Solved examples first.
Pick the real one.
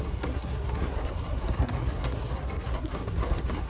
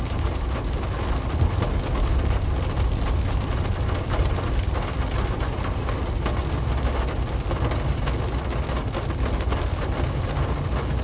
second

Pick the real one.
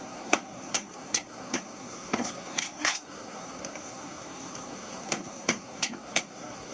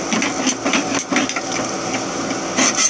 second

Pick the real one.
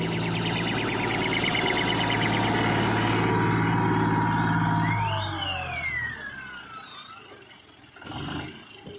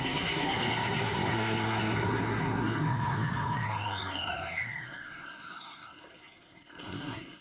first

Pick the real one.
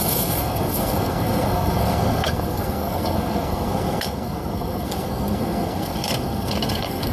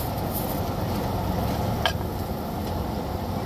second